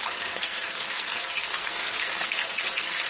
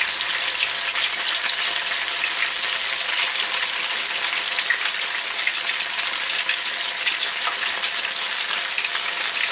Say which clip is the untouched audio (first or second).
second